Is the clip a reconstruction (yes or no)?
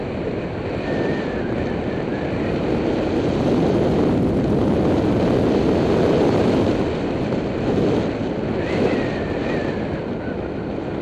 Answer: no